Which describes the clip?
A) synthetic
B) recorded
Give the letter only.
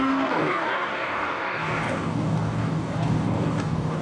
A